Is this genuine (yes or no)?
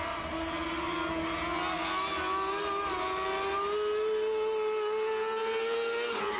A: yes